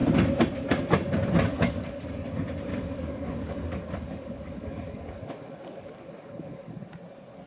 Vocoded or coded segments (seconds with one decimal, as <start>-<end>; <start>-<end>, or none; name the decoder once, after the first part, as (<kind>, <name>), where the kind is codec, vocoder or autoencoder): 1.5-2.1 (codec, DAC); 2.7-6.7